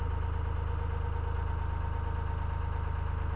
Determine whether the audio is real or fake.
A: real